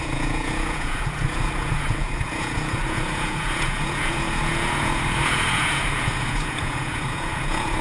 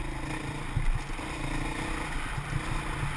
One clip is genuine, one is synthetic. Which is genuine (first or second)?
second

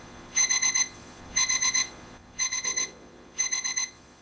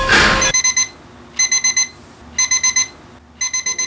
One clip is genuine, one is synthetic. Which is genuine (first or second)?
second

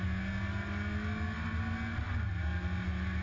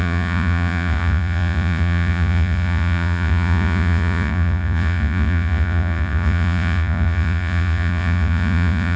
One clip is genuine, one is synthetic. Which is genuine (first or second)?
first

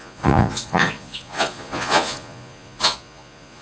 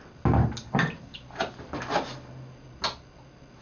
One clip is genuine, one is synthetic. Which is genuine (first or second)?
second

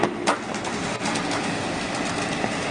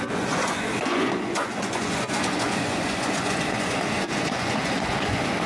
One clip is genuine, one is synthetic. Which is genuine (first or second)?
first